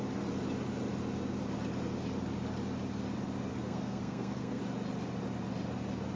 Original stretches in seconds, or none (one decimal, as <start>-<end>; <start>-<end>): 0.0-3.5; 4.6-6.2